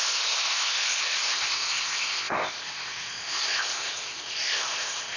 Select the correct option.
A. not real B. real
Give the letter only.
A